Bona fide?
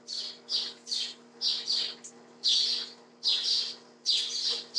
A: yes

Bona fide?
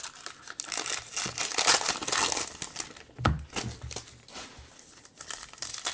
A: yes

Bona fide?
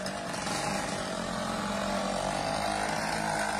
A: yes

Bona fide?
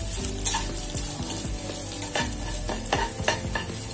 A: yes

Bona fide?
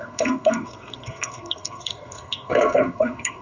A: no